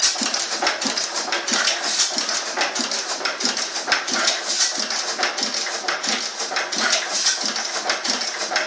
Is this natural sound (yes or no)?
yes